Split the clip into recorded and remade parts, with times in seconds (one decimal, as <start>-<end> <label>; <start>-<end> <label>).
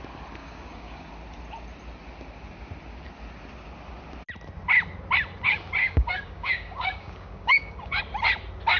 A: 0.0-0.4 recorded; 0.4-1.1 remade; 1.1-5.8 recorded; 5.8-8.0 remade; 8.0-8.8 recorded